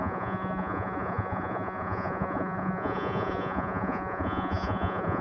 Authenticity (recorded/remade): remade